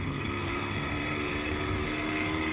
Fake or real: fake